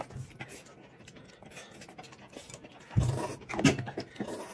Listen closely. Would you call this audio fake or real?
real